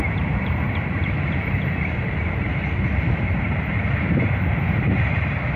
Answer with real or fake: fake